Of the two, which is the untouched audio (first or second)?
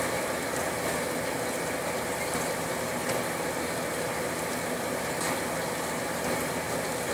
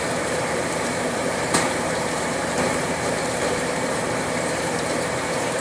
first